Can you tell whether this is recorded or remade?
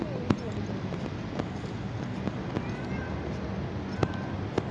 recorded